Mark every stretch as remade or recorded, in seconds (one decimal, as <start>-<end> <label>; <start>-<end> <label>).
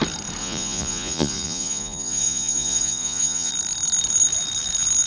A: 0.0-0.4 recorded; 0.4-3.5 remade; 3.5-5.1 recorded